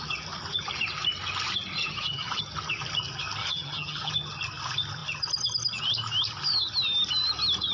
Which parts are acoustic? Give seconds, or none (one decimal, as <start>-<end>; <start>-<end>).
0.0-1.8; 2.4-3.4; 4.1-7.7